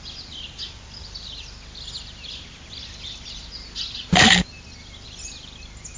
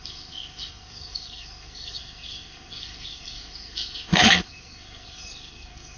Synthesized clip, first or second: second